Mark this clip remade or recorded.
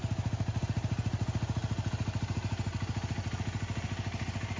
recorded